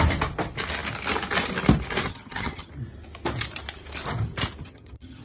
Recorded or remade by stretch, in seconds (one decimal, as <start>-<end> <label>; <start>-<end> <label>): 0.0-2.1 recorded; 2.1-2.7 remade; 2.7-4.6 recorded; 4.6-5.2 remade